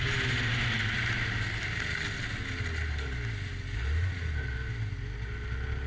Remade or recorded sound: recorded